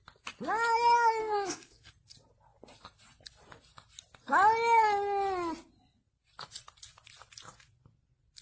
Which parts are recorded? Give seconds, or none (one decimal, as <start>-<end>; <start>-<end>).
0.0-1.2; 1.9-8.4